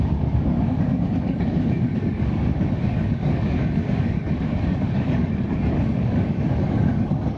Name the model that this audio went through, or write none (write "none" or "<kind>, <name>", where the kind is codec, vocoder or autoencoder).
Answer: codec, DAC